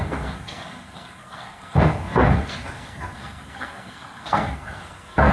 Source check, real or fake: fake